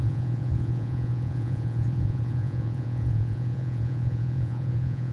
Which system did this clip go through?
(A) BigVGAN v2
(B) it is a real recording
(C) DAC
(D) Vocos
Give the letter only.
D